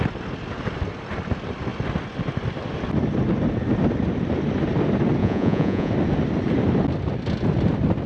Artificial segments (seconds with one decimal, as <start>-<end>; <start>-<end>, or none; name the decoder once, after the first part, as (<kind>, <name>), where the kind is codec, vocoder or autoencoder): 5.2-5.9 (vocoder, Vocos)